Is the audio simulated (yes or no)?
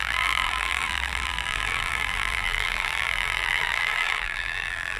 yes